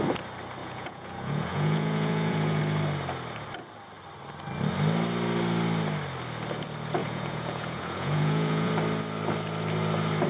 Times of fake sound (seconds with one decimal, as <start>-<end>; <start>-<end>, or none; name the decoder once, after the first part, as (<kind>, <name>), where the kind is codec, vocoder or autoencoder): 0.6-2.6 (vocoder, Vocos); 7.0-8.7